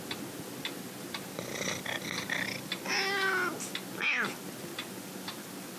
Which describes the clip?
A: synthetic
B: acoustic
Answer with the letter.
B